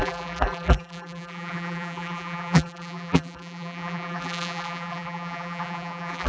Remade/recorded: remade